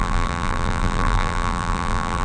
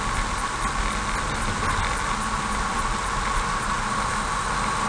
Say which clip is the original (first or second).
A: second